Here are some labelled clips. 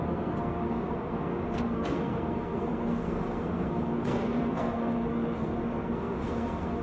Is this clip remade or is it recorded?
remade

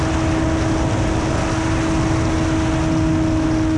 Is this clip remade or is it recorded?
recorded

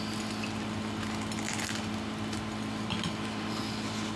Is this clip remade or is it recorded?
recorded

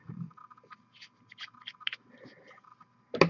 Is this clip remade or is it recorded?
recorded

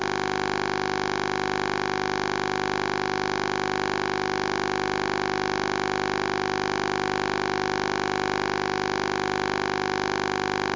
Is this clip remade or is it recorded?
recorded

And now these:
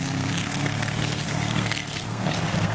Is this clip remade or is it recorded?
remade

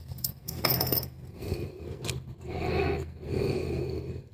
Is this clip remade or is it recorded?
remade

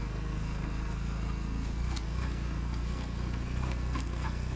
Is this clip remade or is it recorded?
remade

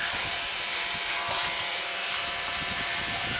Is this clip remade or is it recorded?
remade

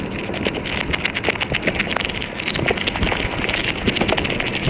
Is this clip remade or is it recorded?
recorded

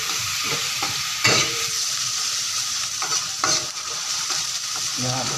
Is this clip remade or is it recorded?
remade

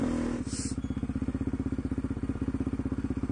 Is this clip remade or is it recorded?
recorded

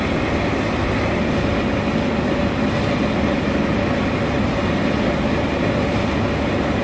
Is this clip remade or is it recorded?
recorded